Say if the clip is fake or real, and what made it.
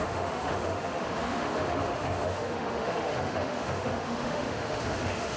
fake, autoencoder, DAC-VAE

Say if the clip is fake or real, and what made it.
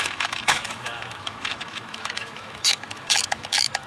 fake, autoencoder, DAC-VAE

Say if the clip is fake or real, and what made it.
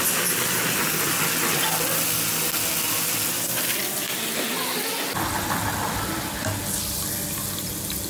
real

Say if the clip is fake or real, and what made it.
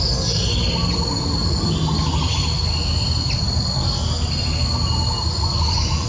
real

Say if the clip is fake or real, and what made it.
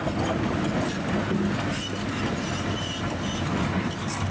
real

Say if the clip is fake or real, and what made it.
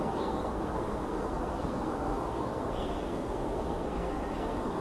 fake, codec, SNAC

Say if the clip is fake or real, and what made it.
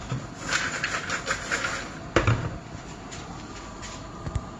real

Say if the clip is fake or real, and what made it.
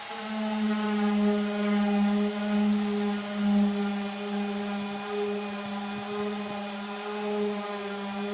real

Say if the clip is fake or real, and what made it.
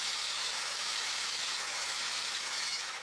fake, autoencoder, DAC-VAE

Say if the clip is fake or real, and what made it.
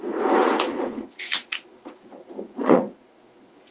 fake, vocoder, Vocos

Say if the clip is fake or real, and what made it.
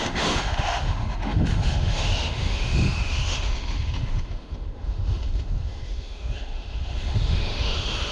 fake, autoencoder, DAC-VAE